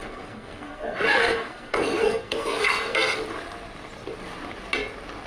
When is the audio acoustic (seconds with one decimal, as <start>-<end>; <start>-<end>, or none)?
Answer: 3.2-5.3

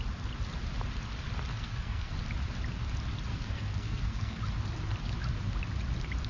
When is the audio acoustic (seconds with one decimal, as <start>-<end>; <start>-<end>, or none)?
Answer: 0.0-1.5; 2.1-3.3; 4.4-6.3